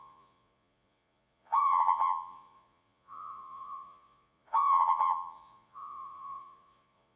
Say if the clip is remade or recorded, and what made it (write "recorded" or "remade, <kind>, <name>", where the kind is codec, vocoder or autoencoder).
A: remade, vocoder, Vocos